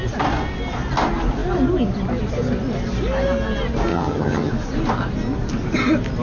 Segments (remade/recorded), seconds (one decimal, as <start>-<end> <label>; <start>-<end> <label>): 0.0-3.9 recorded; 3.9-4.5 remade; 4.5-6.2 recorded